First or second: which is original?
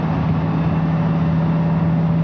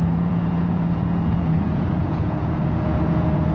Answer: first